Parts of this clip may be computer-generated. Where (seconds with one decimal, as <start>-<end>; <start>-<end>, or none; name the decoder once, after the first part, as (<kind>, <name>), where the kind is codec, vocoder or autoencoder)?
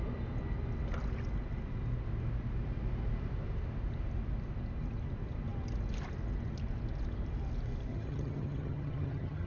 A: 7.9-9.5 (vocoder, HiFi-GAN)